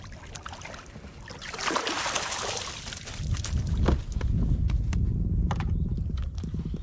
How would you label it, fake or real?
real